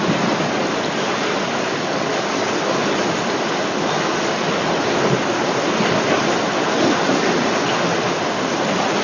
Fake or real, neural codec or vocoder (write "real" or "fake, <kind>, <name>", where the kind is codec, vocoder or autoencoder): real